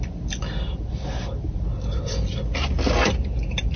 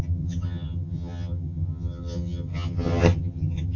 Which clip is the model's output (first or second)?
second